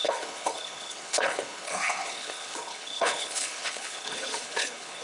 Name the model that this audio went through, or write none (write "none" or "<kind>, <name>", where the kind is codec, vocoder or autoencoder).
codec, HILCodec